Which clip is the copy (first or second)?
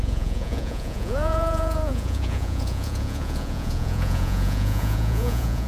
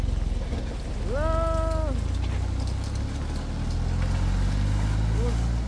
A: first